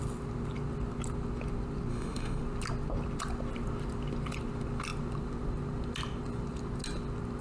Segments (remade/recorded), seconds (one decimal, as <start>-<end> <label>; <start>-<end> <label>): 0.0-1.9 recorded; 1.9-2.4 remade; 2.4-7.4 recorded